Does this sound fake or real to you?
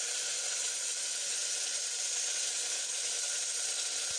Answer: real